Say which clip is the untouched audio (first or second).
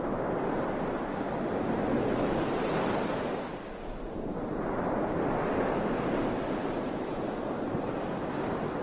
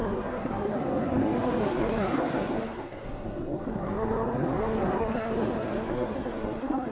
first